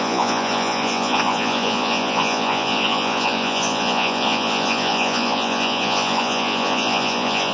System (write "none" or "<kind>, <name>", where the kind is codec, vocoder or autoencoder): vocoder, Vocos